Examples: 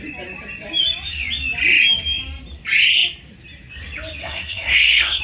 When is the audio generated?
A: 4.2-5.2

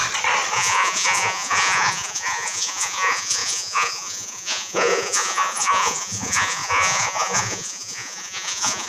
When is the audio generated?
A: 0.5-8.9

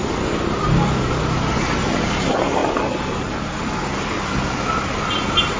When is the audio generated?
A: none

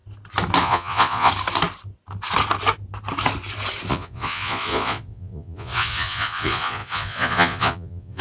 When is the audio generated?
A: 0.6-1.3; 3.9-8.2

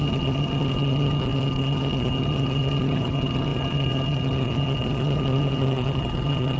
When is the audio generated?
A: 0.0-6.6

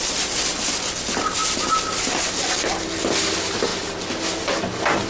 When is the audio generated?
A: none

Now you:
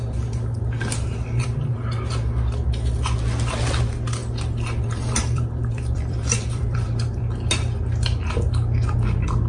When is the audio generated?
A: 4.2-7.2

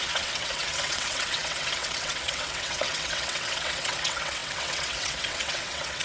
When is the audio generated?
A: 0.0-6.0